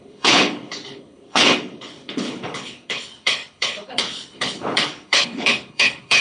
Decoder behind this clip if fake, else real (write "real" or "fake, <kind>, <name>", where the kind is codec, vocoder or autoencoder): fake, codec, HILCodec